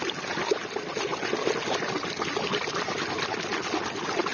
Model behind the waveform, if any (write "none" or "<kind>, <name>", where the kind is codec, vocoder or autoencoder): none